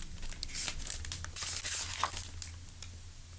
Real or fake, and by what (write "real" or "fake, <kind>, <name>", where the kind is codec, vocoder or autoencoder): real